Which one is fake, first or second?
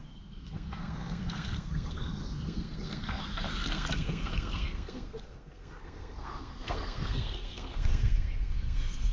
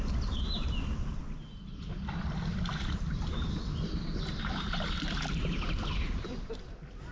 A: first